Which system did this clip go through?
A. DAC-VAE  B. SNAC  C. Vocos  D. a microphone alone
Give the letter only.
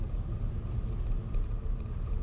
D